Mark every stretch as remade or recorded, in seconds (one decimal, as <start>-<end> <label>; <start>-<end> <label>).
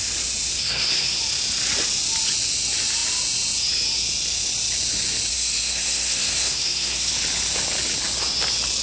0.0-0.6 recorded; 0.6-1.2 remade; 1.2-5.3 recorded; 5.3-7.1 remade; 7.1-8.8 recorded